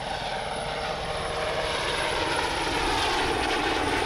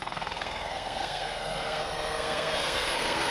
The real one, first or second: first